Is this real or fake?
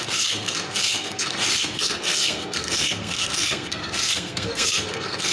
fake